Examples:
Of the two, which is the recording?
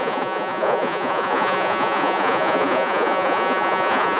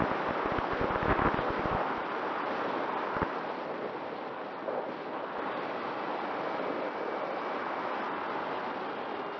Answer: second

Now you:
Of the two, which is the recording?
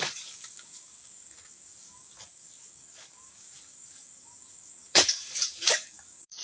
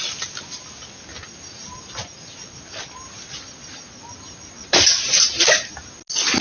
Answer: second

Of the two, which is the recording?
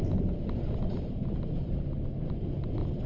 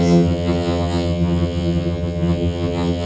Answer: first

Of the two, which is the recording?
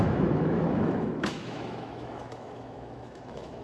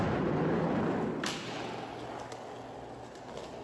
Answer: second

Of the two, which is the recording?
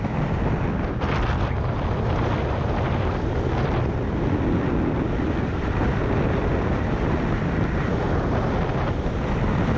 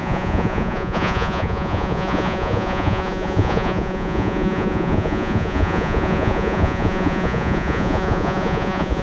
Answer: first